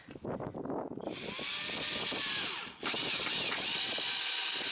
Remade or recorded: recorded